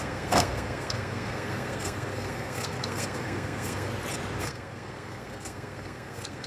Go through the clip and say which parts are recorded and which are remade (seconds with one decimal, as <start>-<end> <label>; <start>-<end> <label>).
0.0-3.9 remade; 3.9-4.4 recorded; 4.4-6.5 remade